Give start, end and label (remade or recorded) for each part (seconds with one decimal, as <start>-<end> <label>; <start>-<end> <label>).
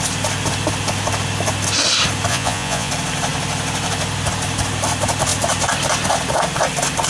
0.0-2.3 recorded; 2.3-2.9 remade; 2.9-7.1 recorded